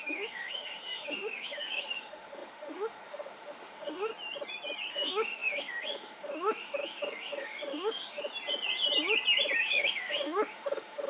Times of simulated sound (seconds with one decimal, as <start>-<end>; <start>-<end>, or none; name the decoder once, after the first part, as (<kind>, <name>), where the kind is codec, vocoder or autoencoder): 0.0-4.1 (autoencoder, DAC-VAE); 4.9-8.2; 9.6-11.1